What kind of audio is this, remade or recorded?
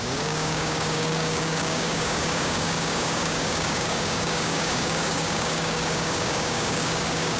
remade